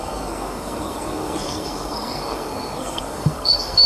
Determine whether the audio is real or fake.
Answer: fake